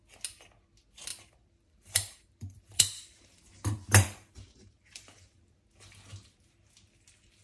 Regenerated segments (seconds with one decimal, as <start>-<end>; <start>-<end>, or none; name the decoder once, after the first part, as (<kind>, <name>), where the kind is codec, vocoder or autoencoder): 1.1-5.5 (vocoder, BigVGAN v2)